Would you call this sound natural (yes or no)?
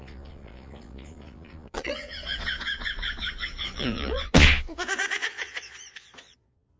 no